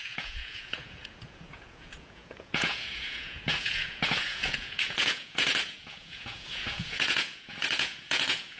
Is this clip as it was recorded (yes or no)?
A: no